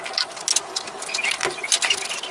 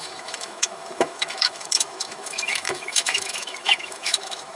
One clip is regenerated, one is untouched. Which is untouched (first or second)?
first